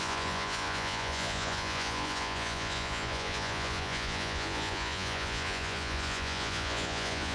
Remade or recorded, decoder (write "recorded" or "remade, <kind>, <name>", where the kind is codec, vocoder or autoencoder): remade, vocoder, Vocos